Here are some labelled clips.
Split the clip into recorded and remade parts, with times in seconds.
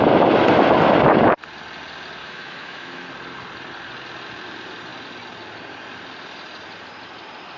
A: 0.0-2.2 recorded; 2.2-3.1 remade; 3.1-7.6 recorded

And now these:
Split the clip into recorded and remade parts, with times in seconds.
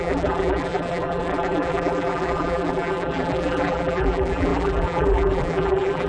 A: 0.0-6.1 remade